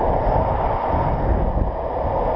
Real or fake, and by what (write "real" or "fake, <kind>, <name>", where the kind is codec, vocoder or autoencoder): real